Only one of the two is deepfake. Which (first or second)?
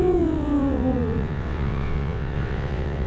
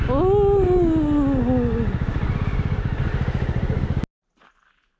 first